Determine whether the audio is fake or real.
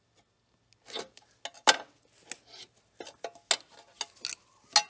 real